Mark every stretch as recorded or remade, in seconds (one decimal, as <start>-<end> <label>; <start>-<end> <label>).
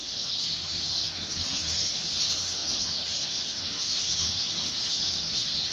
0.0-5.7 remade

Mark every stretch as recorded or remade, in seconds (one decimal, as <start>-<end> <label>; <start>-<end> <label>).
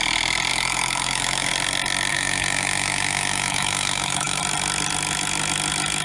0.0-0.5 recorded; 0.5-1.5 remade; 1.5-2.1 recorded; 2.1-4.4 remade; 4.4-6.0 recorded